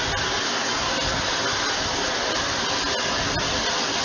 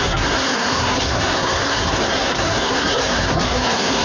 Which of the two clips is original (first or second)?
first